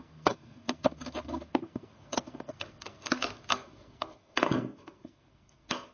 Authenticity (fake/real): fake